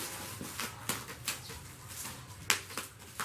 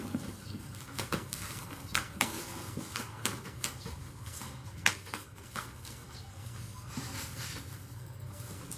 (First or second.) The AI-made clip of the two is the second